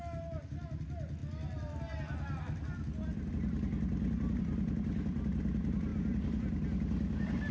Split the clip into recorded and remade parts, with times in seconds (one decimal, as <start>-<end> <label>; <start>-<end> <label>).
0.0-7.5 recorded